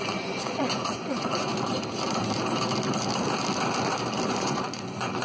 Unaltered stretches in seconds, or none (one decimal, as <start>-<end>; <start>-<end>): 1.5-4.3